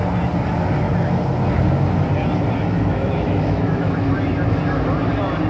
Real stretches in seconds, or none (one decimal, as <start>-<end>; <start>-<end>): 0.0-2.9; 4.0-5.5